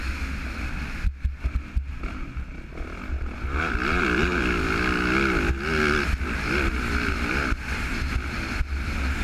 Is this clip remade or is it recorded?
recorded